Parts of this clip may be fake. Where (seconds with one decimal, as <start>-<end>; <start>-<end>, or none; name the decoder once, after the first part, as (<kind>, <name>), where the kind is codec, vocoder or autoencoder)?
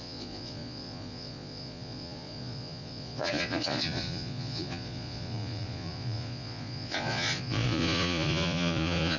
0.0-9.2 (vocoder, Vocos)